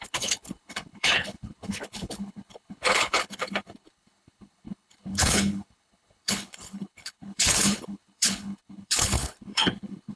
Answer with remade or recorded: remade